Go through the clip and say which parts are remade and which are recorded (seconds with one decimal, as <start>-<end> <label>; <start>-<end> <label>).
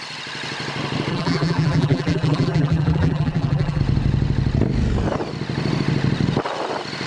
0.0-1.1 recorded; 1.1-3.8 remade; 3.8-7.1 recorded